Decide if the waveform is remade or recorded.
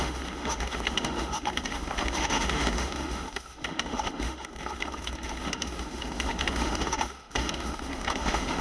remade